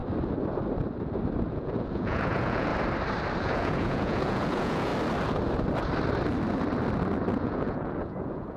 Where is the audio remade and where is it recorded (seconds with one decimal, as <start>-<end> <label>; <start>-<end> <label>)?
0.0-1.5 recorded; 1.5-2.7 remade; 2.7-3.4 recorded; 3.4-4.9 remade; 4.9-7.3 recorded; 7.3-8.6 remade